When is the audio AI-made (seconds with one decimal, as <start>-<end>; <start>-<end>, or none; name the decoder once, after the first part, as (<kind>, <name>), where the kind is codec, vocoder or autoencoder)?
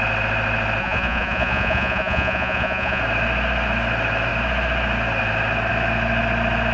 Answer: 0.8-3.0 (vocoder, Vocos)